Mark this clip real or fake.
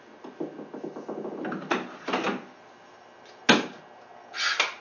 real